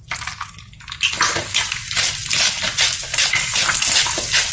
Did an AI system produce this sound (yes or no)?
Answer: no